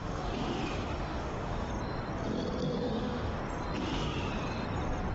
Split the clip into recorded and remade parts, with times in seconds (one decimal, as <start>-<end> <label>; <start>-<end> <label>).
0.0-1.7 remade; 1.7-2.8 recorded; 2.8-3.4 remade; 3.4-3.8 recorded; 3.8-4.3 remade; 4.3-5.1 recorded